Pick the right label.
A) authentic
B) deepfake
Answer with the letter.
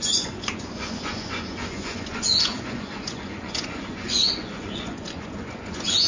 B